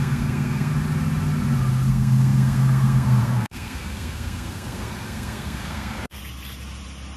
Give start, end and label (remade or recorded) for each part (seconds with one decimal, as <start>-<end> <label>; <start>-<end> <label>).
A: 0.0-0.7 remade; 0.7-1.9 recorded; 1.9-6.2 remade; 6.2-7.2 recorded